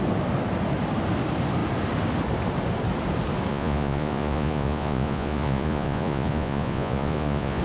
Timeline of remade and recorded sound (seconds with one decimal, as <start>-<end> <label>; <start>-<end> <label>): 0.0-3.5 recorded; 3.5-7.6 remade